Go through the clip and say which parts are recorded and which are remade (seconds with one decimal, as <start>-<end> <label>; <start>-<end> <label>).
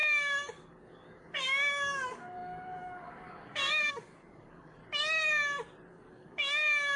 0.0-4.8 remade; 4.8-5.9 recorded; 5.9-7.0 remade